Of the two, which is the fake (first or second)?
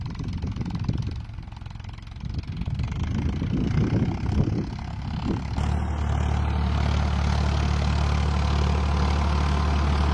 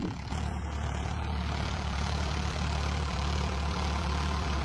second